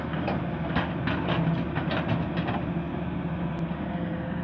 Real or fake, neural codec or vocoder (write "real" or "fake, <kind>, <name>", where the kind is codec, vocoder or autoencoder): real